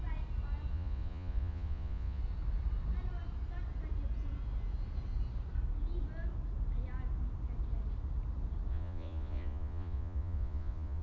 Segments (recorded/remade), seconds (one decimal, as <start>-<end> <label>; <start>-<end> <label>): 0.0-0.7 recorded; 0.7-2.2 remade; 2.2-8.7 recorded; 8.7-11.0 remade